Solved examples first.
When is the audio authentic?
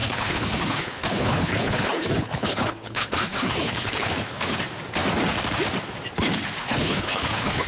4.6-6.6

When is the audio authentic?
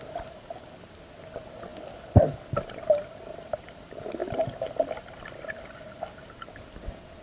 0.0-7.2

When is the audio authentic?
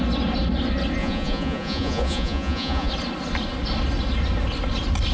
0.0-1.0; 2.9-5.1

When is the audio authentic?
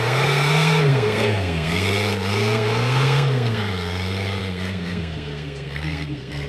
none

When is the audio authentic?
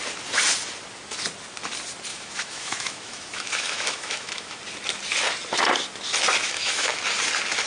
0.0-2.1; 4.6-6.4; 7.0-7.7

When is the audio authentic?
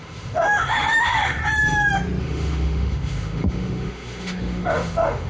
1.4-2.2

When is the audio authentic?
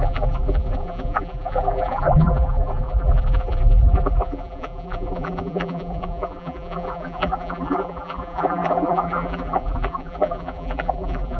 none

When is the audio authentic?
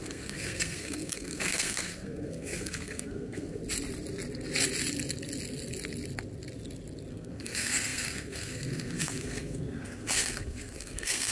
3.6-7.1